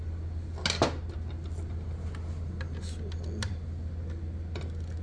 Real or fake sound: real